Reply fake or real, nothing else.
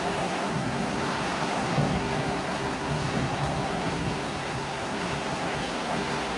fake